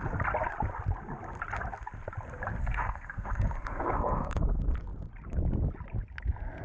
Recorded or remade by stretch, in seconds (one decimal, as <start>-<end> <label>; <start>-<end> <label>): 0.0-2.6 recorded; 2.6-4.4 remade; 4.4-6.6 recorded